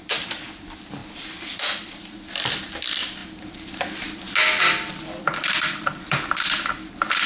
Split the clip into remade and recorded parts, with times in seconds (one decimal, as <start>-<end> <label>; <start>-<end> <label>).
0.0-3.2 remade; 3.2-4.6 recorded; 4.6-7.3 remade